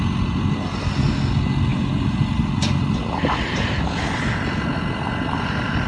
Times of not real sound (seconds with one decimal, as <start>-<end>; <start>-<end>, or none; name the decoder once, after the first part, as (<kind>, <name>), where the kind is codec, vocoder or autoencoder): none